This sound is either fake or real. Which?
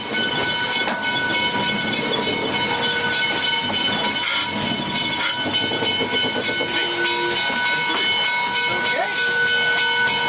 real